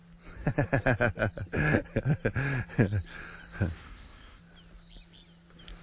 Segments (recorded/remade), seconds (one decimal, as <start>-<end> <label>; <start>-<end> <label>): 0.0-3.8 recorded; 3.8-4.4 remade; 4.4-5.8 recorded